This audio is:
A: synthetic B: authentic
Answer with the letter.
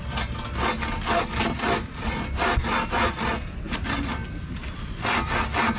B